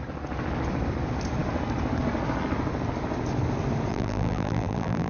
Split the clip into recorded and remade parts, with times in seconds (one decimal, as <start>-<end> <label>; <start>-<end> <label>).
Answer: 0.0-3.9 recorded; 3.9-5.1 remade